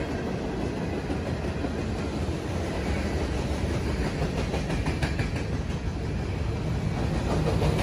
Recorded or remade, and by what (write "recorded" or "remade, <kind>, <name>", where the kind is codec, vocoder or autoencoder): recorded